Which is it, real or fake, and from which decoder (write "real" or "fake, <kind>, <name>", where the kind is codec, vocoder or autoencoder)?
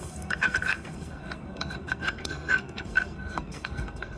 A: fake, codec, SNAC